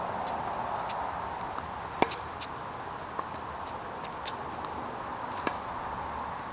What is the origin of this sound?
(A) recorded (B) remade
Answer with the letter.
A